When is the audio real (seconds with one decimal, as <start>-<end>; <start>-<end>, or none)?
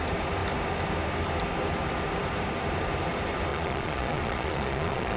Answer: 0.0-3.5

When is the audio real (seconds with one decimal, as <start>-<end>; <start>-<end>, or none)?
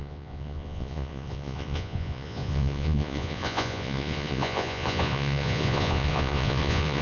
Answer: none